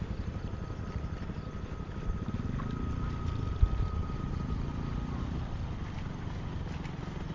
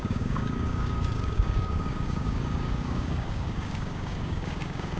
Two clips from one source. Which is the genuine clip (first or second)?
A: first